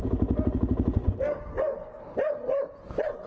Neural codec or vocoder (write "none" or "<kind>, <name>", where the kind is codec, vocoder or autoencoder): none